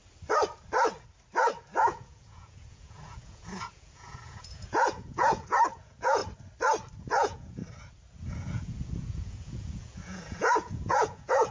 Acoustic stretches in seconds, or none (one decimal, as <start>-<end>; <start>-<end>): 0.0-1.8; 6.2-7.0; 7.6-8.3